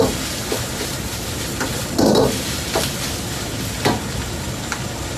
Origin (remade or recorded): recorded